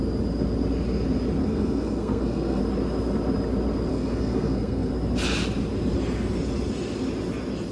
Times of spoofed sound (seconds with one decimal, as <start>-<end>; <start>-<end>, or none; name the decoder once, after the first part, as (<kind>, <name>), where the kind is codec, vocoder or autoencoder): 1.4-2.6 (codec, SNAC); 3.9-4.9